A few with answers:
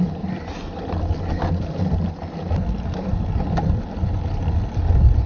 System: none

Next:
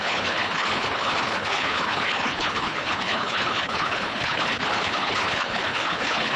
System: codec, HILCodec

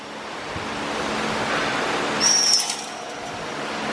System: none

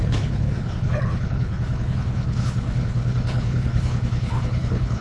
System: codec, HILCodec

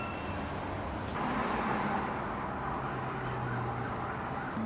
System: none